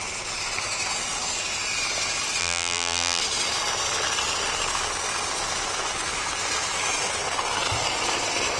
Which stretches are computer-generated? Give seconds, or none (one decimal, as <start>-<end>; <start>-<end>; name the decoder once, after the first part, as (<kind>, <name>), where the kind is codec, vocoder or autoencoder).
2.4-3.2 (vocoder, BigVGAN v2)